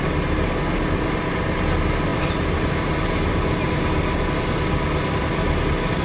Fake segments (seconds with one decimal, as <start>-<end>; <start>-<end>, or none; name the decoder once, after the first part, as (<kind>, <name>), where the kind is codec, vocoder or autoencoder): none